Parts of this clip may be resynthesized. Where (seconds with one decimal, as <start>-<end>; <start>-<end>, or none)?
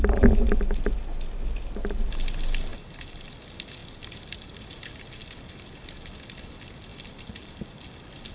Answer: none